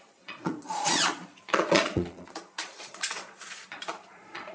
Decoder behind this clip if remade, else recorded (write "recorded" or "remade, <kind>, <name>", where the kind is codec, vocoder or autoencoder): remade, vocoder, Vocos